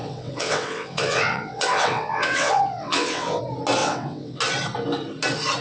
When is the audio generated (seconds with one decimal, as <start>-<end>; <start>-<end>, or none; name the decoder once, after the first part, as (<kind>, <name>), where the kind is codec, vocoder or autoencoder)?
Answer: 0.0-3.4 (vocoder, WaveNeXt); 3.8-4.4